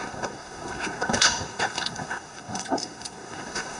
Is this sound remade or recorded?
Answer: remade